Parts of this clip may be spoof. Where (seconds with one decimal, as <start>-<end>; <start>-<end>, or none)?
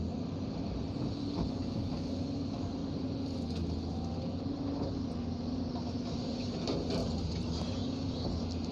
7.0-7.6